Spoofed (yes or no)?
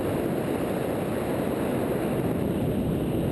no